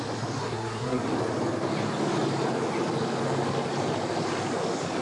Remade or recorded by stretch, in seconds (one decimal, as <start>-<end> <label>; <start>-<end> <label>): 0.0-0.4 recorded; 0.4-1.0 remade; 1.0-5.0 recorded